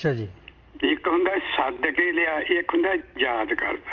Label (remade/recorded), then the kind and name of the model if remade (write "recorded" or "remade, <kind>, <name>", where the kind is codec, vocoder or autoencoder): recorded